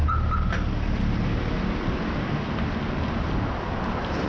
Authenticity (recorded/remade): recorded